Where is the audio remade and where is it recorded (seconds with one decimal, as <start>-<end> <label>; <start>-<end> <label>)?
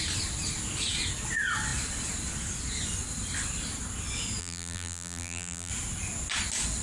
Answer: 0.0-4.4 recorded; 4.4-5.7 remade; 5.7-6.8 recorded